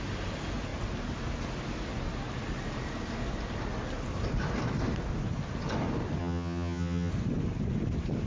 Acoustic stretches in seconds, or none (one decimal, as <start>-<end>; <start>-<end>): 0.0-6.2; 7.1-8.3